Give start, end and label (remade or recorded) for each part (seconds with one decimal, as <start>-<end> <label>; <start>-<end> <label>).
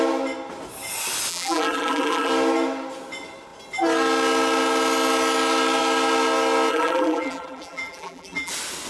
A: 0.0-1.3 recorded; 1.3-2.3 remade; 2.3-6.7 recorded; 6.7-8.5 remade; 8.5-8.9 recorded